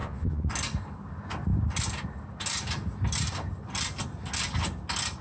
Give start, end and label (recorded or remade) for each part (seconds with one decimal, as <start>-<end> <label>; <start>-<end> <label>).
0.0-0.5 remade; 0.5-5.2 recorded